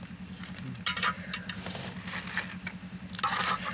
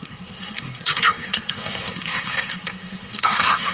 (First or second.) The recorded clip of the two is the first